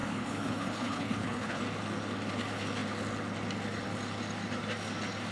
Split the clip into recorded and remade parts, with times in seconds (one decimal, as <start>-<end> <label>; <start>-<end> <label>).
0.0-1.6 remade; 1.6-5.3 recorded